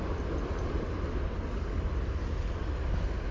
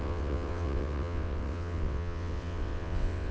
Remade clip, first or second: second